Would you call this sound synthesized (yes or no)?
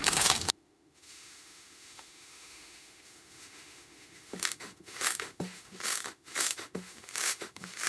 yes